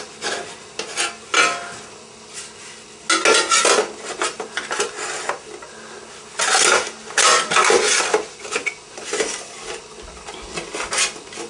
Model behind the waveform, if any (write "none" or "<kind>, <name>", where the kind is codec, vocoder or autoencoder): none